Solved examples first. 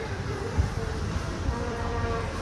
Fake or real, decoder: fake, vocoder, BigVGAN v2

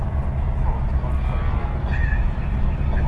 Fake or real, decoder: real